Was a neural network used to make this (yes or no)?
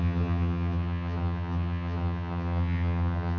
yes